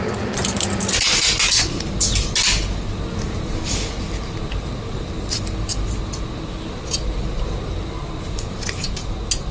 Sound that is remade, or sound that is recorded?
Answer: recorded